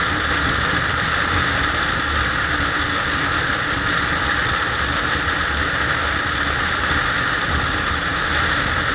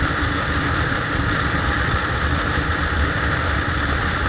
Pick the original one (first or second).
first